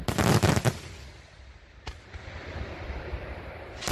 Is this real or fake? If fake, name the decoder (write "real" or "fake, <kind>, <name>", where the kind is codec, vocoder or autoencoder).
real